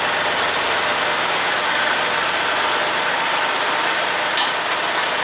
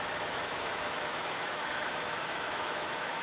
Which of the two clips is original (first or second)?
first